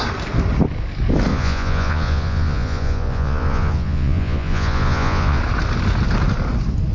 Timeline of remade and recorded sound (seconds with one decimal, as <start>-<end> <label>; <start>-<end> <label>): 0.0-1.3 recorded; 1.3-5.4 remade; 5.4-6.9 recorded